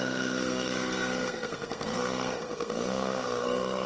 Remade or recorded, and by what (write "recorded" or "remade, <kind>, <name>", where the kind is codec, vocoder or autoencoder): remade, codec, SNAC